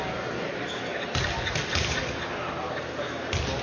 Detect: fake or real real